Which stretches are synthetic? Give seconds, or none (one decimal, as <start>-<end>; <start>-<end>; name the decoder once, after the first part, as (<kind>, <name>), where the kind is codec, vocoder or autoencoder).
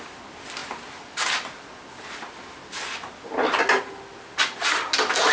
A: none